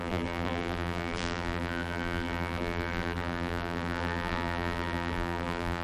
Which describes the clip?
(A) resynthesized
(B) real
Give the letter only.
A